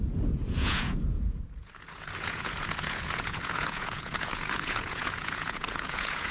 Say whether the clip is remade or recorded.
remade